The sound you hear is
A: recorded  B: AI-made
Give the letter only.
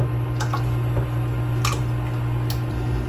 A